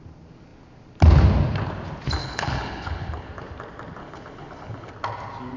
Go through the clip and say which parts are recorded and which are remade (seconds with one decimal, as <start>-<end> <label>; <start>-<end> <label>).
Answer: 0.0-2.2 recorded; 2.2-3.3 remade; 3.3-4.0 recorded; 4.0-4.9 remade; 4.9-5.6 recorded